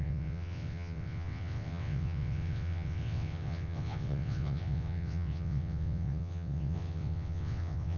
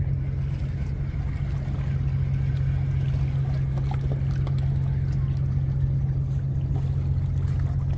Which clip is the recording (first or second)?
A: second